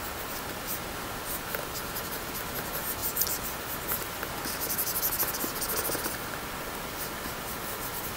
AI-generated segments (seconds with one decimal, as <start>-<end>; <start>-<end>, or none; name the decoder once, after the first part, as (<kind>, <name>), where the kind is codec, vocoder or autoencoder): none